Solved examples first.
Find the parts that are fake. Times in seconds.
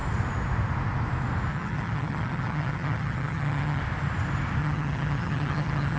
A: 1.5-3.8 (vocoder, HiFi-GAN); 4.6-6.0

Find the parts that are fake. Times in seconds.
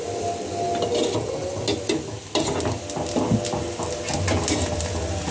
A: none